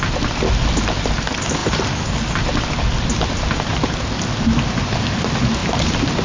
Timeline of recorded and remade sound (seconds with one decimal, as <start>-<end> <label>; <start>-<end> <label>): 0.0-6.2 recorded